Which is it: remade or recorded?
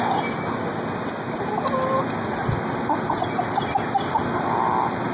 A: recorded